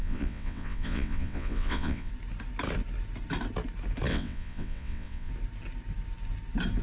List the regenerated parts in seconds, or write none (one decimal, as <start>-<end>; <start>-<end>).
0.0-2.1; 4.1-5.3